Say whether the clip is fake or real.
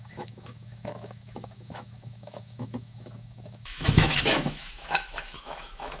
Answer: fake